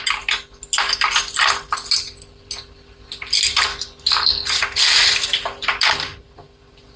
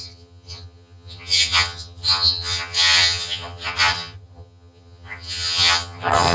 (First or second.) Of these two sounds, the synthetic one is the second